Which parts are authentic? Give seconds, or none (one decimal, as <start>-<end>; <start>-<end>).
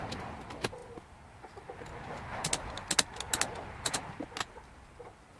0.0-5.4